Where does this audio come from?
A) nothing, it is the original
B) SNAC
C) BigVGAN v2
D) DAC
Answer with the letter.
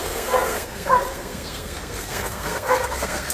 B